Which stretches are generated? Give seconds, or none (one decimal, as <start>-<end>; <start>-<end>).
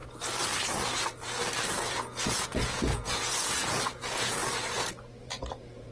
1.9-4.4; 5.2-5.9